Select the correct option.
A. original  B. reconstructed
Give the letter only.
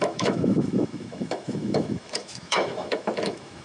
B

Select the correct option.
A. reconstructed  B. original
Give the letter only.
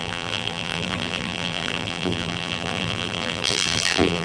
A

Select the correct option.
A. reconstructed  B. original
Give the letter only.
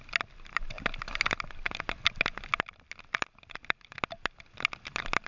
B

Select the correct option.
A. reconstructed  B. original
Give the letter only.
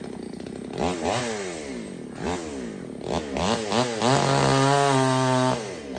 B